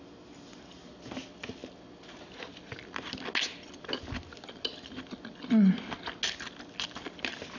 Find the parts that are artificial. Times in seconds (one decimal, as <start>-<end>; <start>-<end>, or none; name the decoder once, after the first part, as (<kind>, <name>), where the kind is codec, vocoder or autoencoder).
none